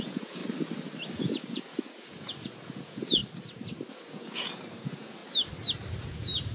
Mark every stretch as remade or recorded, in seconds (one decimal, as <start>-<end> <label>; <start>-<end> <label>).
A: 0.0-0.4 remade; 0.4-1.2 recorded; 1.2-3.2 remade; 3.2-3.9 recorded; 3.9-5.2 remade; 5.2-5.9 recorded; 5.9-6.5 remade